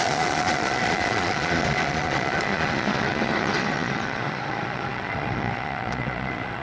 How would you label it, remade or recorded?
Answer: remade